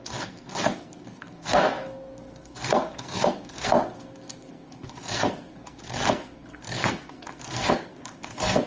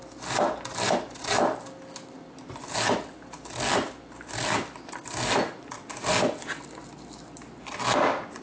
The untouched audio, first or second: second